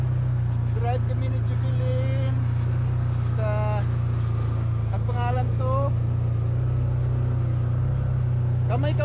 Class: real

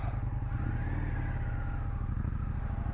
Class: real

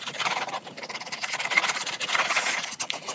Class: fake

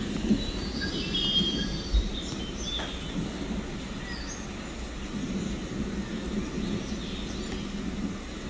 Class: real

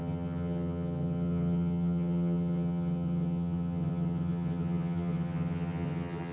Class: fake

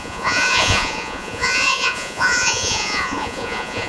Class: fake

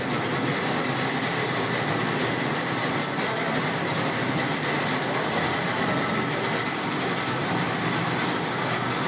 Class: real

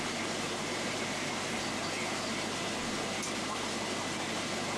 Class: real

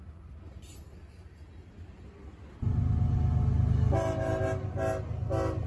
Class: real